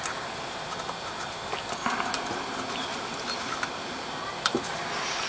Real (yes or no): yes